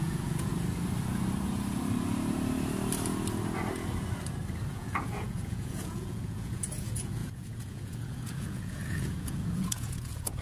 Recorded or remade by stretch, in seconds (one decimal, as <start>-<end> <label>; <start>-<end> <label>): 0.0-0.5 remade; 0.5-4.7 recorded; 4.7-10.4 remade